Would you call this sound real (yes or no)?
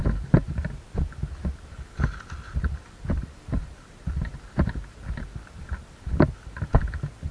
yes